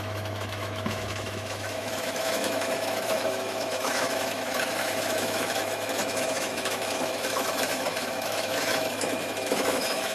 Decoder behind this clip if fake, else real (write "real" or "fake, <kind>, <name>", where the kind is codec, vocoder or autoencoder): fake, autoencoder, DAC-VAE